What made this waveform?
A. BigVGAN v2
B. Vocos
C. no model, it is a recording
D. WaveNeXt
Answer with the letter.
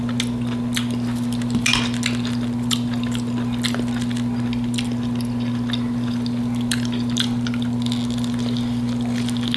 C